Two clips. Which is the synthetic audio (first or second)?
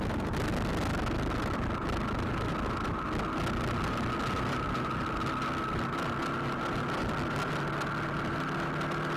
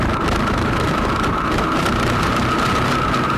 second